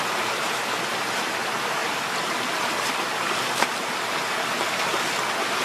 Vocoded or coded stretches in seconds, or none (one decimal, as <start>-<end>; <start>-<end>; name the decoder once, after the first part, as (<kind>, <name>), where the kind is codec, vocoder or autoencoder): 1.8-3.9 (vocoder, BigVGAN v2)